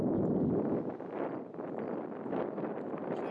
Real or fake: real